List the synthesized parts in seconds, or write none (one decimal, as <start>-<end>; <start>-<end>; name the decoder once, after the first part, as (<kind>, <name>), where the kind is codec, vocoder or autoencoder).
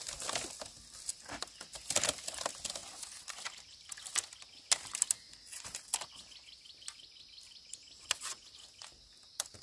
none